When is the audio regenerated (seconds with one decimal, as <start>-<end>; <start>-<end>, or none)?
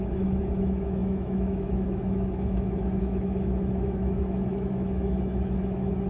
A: 0.0-6.1